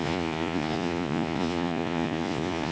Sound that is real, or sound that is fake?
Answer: fake